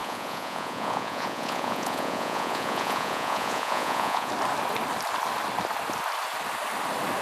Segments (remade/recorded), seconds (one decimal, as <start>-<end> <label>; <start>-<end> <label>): 0.0-4.3 remade; 4.3-7.2 recorded